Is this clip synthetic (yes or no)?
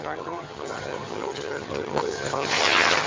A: yes